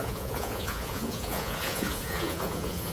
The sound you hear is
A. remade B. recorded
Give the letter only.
A